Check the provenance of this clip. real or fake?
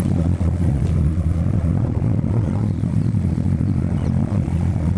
fake